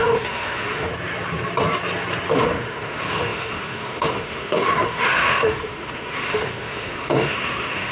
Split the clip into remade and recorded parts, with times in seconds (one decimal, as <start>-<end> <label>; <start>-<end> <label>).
0.0-0.9 remade; 0.9-2.3 recorded; 2.3-7.9 remade

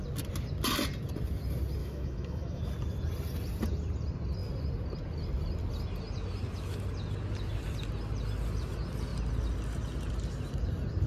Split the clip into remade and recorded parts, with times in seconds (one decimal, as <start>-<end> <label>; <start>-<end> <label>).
0.0-1.8 recorded; 1.8-2.7 remade; 2.7-11.1 recorded

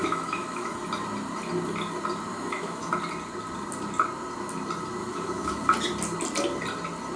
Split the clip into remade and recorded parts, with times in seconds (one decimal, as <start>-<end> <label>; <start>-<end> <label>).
0.0-0.8 remade; 0.8-2.3 recorded; 2.3-2.9 remade; 2.9-5.0 recorded; 5.0-5.6 remade; 5.6-7.2 recorded

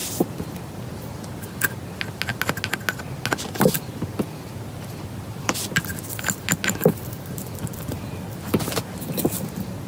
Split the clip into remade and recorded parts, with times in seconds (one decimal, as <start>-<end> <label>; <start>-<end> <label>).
0.0-9.9 recorded

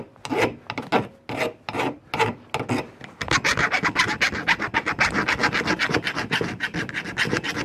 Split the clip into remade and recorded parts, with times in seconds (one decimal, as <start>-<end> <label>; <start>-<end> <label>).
0.0-7.6 recorded

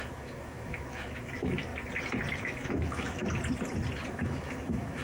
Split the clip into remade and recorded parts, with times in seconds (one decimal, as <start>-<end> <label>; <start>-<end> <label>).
0.0-1.7 remade; 1.7-2.4 recorded; 2.4-3.2 remade; 3.2-4.1 recorded; 4.1-5.0 remade